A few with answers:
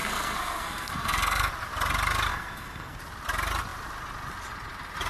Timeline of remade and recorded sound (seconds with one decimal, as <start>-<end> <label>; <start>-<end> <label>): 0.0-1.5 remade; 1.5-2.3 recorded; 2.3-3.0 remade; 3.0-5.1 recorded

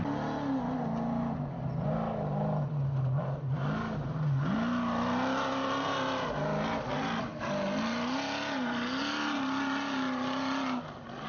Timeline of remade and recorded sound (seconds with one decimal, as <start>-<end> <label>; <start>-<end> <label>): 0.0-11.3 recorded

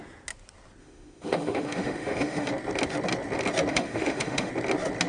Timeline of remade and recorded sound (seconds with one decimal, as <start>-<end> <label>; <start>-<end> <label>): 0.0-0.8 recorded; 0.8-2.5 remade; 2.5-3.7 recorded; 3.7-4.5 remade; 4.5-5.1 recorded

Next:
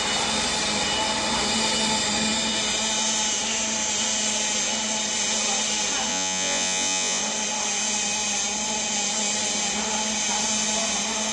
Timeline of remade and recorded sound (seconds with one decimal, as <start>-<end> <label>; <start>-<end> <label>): 0.0-6.1 recorded; 6.1-7.2 remade; 7.2-11.3 recorded

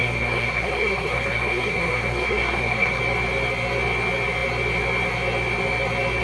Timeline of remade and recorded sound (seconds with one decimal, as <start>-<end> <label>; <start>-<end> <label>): 0.0-3.0 remade; 3.0-6.2 recorded

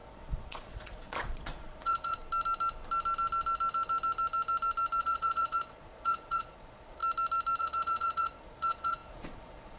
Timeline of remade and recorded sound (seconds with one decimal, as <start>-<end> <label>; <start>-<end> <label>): 0.0-2.2 remade; 2.2-5.0 recorded; 5.0-7.0 remade; 7.0-7.6 recorded; 7.6-9.8 remade